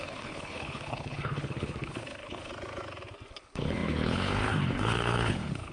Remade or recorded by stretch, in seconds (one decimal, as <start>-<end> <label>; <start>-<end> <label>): 0.0-2.5 remade; 2.5-3.3 recorded; 3.3-5.7 remade